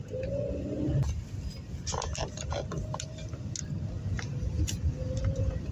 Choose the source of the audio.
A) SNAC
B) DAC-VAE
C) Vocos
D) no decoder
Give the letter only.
D